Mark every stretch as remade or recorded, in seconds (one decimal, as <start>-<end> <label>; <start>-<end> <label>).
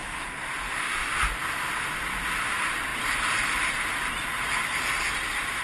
0.0-1.1 remade; 1.1-5.6 recorded